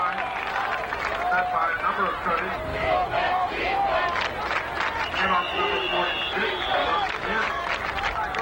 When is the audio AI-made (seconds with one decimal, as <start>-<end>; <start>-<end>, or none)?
2.7-4.0; 6.8-7.7